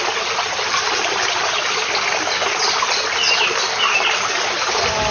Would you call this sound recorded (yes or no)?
yes